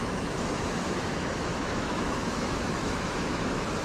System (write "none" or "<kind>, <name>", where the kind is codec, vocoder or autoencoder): autoencoder, DAC-VAE